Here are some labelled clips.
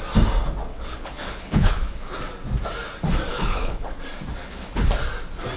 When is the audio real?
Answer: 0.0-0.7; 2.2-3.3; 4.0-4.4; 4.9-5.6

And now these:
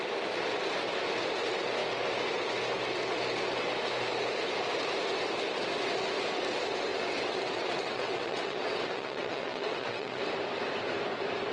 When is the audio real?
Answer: 0.0-6.9; 10.2-11.5